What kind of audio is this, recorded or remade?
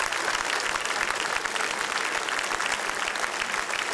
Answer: recorded